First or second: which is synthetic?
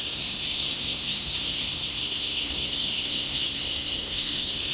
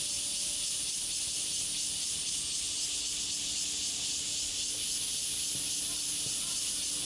first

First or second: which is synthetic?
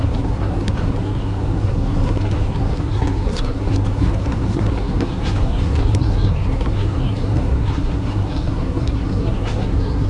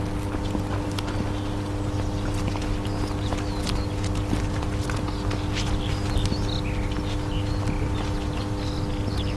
first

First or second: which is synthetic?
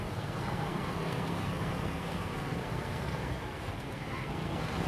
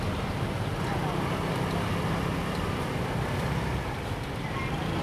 first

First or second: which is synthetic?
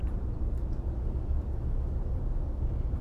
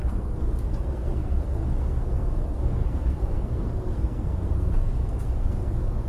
second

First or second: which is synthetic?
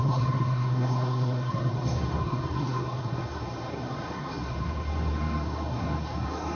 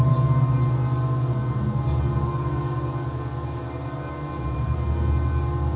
first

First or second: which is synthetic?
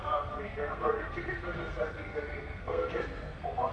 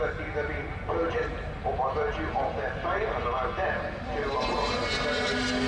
first